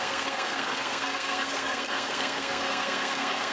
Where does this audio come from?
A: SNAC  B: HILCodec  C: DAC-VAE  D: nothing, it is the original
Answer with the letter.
A